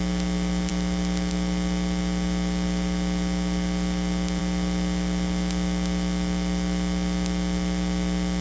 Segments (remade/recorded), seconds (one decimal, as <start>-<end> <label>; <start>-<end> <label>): 0.0-8.4 recorded